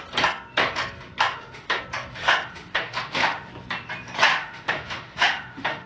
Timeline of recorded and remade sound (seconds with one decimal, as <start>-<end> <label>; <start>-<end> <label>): 0.0-1.3 recorded; 1.3-1.8 remade; 1.8-2.2 recorded; 2.2-3.5 remade; 3.5-4.3 recorded; 4.3-5.9 remade